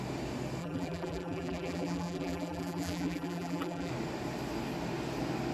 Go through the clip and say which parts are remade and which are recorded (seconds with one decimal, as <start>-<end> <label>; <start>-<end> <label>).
0.0-0.6 recorded; 0.6-3.9 remade; 3.9-5.5 recorded